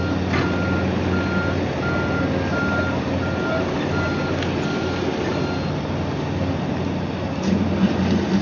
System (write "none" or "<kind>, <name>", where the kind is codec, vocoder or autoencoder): none